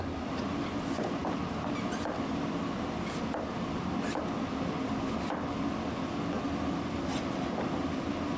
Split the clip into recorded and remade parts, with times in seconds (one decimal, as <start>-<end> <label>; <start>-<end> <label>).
0.0-8.4 recorded